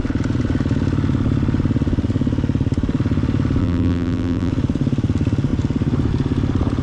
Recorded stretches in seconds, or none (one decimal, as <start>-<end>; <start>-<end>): 0.0-3.6; 4.5-6.8